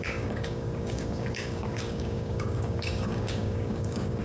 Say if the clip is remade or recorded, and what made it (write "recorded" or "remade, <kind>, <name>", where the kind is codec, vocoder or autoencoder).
remade, codec, DAC